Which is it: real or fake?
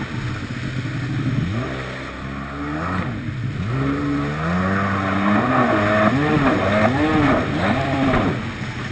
real